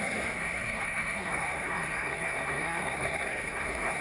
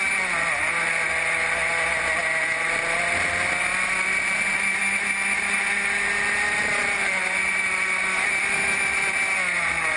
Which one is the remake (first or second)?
first